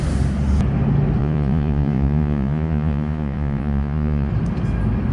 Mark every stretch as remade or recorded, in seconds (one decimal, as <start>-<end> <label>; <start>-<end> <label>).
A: 0.0-1.2 recorded; 1.2-4.3 remade; 4.3-5.1 recorded